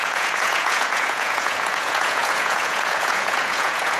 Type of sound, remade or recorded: remade